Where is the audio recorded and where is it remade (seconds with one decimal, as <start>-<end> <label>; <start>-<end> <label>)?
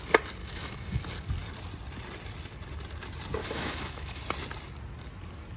0.0-0.4 recorded; 0.4-1.0 remade; 1.0-3.4 recorded; 3.4-4.2 remade; 4.2-5.6 recorded